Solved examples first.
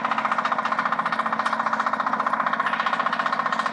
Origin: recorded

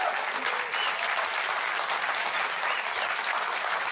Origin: recorded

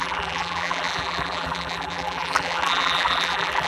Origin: remade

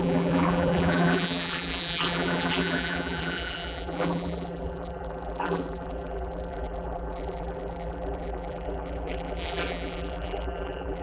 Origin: remade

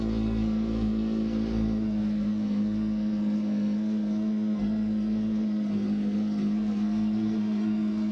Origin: remade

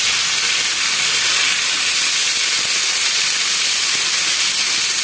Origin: recorded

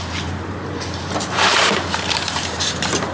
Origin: remade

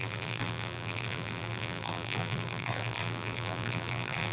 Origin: remade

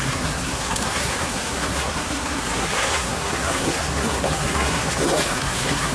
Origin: remade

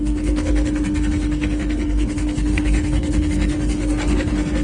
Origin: remade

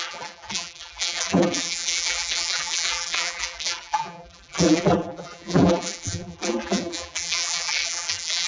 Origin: remade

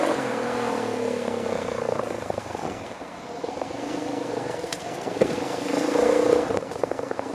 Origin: remade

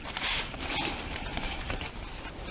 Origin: remade